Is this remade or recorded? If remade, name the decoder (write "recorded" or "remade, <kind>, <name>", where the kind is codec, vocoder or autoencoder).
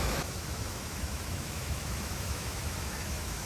remade, autoencoder, DAC-VAE